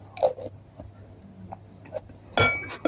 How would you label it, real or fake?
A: real